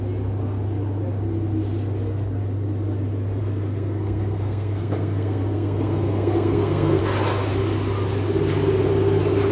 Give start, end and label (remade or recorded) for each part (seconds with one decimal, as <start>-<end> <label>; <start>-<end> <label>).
0.0-3.4 recorded; 3.4-7.0 remade; 7.0-9.5 recorded